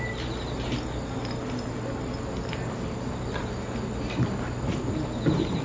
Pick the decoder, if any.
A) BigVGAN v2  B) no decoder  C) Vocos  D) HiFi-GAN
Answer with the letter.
B